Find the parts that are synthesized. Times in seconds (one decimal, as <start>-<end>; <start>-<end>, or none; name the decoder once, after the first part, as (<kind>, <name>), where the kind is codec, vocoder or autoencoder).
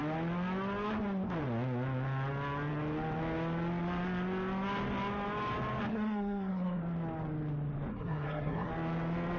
5.9-6.8 (codec, SNAC); 7.9-8.7